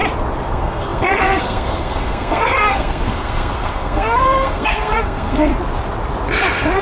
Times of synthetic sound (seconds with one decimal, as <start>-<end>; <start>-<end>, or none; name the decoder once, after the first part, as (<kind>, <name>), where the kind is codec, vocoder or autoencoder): 0.5-5.5 (codec, SNAC)